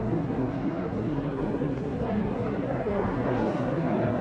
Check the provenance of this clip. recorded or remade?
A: remade